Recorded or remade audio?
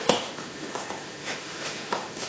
remade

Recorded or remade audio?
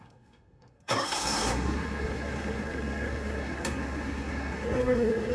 remade